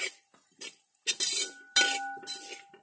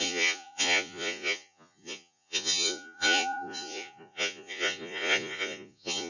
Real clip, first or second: first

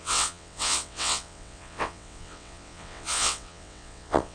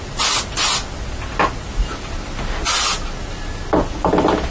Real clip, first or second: second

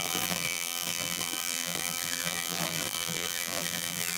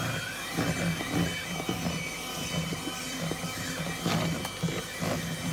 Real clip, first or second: second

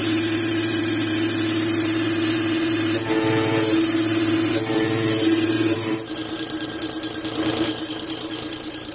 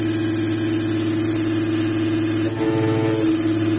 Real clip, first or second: second